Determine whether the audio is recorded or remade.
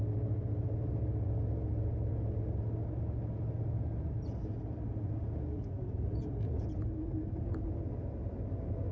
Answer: recorded